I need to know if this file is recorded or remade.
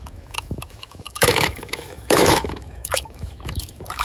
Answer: remade